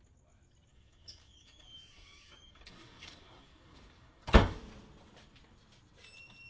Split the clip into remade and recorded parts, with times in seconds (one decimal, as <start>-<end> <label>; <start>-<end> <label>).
0.0-0.7 recorded; 0.7-4.6 remade; 4.6-6.5 recorded